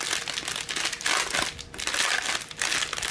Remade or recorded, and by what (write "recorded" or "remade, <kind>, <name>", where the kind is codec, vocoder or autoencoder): recorded